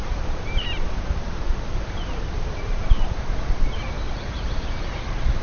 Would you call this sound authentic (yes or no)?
no